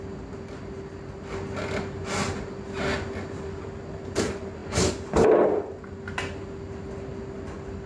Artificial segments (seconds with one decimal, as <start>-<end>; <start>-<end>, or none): none